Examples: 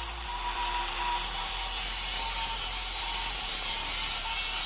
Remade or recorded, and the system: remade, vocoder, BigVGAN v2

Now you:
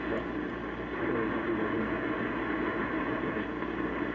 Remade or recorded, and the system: recorded